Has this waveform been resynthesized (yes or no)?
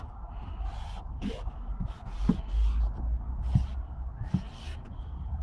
no